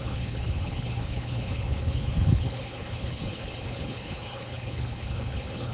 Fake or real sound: fake